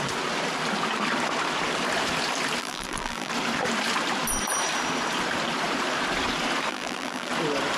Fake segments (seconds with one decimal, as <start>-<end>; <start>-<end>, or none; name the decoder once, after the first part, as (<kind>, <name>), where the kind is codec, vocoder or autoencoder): 2.6-3.3 (vocoder, BigVGAN v2); 6.7-7.3